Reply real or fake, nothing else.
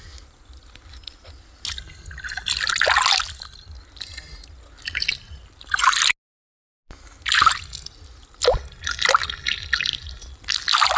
real